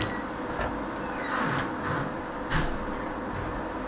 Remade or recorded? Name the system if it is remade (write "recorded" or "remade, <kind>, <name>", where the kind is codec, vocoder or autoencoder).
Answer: recorded